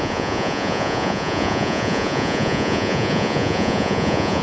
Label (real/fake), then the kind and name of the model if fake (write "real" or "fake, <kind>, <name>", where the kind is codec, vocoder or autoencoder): fake, vocoder, Vocos